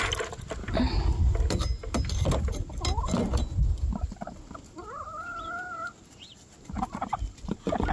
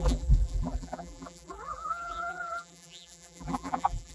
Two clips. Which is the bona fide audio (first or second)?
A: first